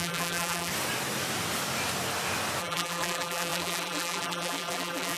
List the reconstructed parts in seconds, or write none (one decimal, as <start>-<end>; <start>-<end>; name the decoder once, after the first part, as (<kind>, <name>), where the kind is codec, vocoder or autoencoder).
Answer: 0.0-0.7 (vocoder, BigVGAN v2); 2.6-5.2